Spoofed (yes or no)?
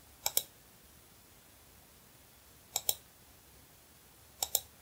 no